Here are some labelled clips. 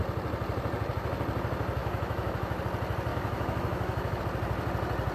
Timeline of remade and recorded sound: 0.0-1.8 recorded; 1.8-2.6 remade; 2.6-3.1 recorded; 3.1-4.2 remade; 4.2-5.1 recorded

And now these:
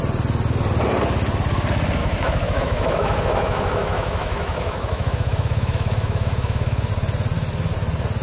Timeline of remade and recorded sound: 0.0-2.0 recorded; 2.0-6.9 remade; 6.9-8.2 recorded

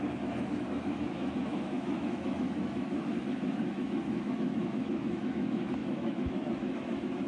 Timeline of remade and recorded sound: 0.0-7.3 remade

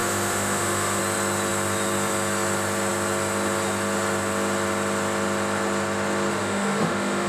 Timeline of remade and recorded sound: 0.0-1.0 remade; 1.0-6.3 recorded; 6.3-7.3 remade

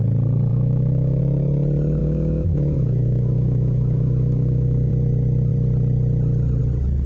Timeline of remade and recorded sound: 0.0-0.5 recorded; 0.5-1.2 remade; 1.2-2.0 recorded; 2.0-4.9 remade; 4.9-7.1 recorded

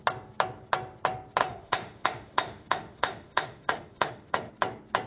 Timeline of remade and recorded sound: 0.0-1.4 recorded; 1.4-4.5 remade; 4.5-5.1 recorded